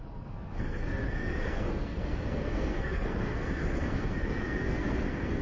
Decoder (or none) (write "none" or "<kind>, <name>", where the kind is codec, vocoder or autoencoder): codec, SNAC